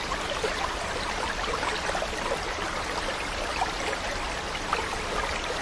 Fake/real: fake